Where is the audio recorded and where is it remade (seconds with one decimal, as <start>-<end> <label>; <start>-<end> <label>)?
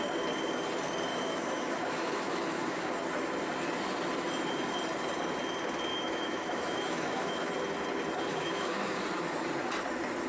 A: 0.0-1.1 recorded; 1.1-2.8 remade; 2.8-5.9 recorded; 5.9-7.5 remade; 7.5-8.3 recorded; 8.3-9.0 remade; 9.0-10.3 recorded